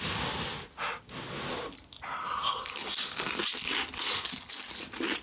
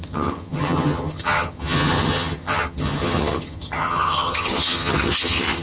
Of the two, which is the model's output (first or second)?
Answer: second